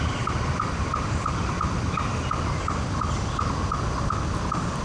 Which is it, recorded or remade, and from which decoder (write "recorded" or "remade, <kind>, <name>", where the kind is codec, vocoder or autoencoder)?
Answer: recorded